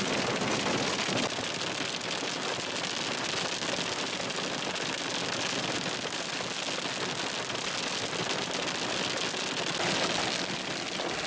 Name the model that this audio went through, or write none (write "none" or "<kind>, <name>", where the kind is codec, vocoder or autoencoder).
none